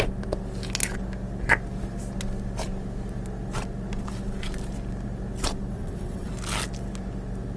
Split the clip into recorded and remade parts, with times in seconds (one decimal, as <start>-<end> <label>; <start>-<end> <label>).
0.0-5.7 recorded; 5.7-6.3 remade; 6.3-7.6 recorded